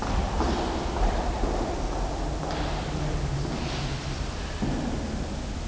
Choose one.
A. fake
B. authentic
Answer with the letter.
B